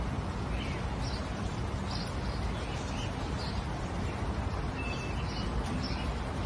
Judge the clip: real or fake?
real